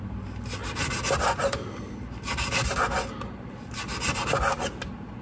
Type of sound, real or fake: real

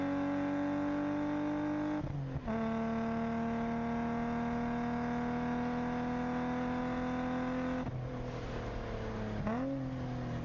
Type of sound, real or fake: real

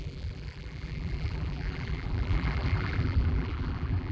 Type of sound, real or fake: fake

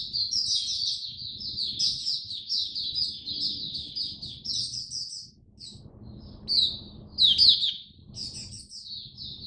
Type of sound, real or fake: real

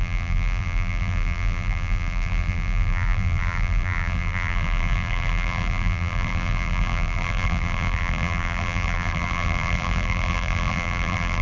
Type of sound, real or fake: fake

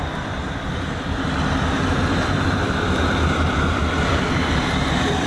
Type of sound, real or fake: fake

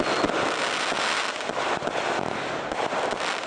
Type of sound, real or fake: real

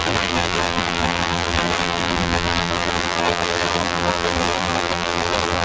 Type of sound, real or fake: fake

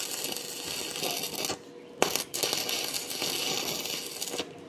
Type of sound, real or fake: real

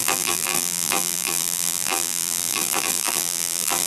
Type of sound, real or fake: fake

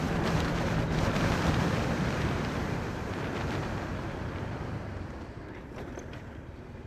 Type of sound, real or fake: fake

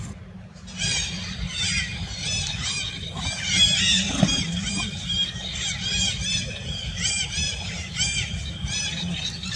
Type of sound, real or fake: real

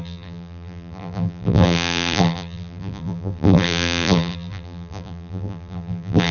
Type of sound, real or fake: fake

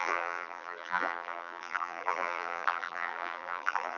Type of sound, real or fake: fake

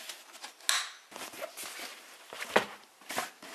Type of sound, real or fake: real